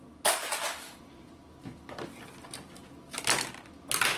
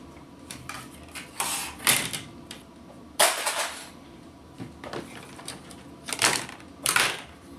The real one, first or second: first